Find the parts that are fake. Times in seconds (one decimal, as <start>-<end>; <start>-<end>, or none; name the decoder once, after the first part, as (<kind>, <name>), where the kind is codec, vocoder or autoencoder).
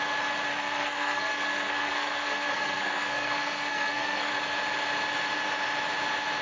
0.5-4.3 (codec, SNAC)